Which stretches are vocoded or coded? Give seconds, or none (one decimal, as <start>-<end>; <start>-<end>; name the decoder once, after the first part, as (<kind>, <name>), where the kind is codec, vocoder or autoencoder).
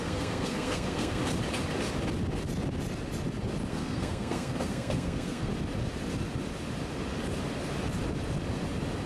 0.0-1.2 (codec, SNAC); 3.7-5.5